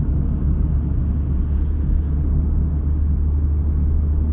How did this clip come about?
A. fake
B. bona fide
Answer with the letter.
B